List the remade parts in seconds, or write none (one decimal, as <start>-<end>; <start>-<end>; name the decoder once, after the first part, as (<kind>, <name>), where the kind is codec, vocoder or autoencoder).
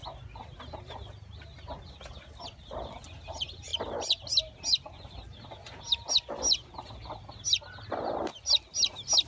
none